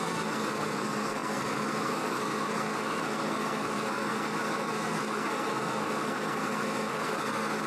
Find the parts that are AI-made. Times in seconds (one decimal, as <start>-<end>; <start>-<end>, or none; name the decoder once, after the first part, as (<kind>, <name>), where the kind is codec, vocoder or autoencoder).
0.0-7.7 (codec, SNAC)